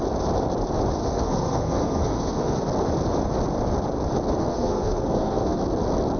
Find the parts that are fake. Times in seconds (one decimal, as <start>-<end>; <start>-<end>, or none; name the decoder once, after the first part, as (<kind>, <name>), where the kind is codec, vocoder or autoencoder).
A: 1.0-2.6 (codec, SNAC); 4.4-5.6